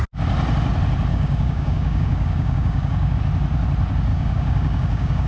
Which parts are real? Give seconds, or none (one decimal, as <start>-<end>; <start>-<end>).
0.0-1.1; 3.2-4.1